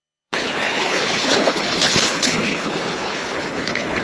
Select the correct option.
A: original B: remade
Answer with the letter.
B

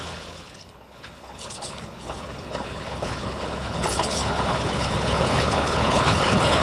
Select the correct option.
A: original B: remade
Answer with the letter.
B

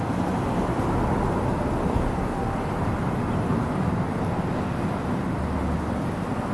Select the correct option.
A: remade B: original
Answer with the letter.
B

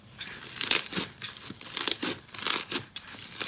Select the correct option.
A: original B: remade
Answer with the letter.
A